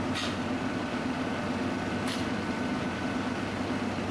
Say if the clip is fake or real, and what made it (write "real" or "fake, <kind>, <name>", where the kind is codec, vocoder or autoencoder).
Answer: real